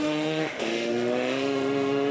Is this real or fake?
fake